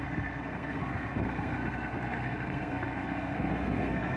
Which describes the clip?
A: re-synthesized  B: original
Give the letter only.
A